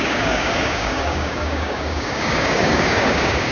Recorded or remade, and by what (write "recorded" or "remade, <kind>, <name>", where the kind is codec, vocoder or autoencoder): remade, codec, DAC